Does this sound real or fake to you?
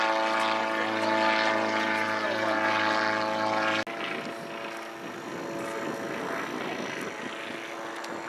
real